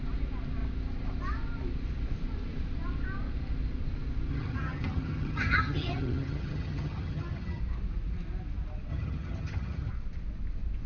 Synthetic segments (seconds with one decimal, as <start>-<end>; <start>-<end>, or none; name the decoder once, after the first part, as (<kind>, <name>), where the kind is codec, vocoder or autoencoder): 4.3-7.6 (vocoder, HiFi-GAN); 8.9-9.9